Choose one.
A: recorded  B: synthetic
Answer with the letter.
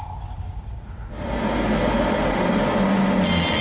A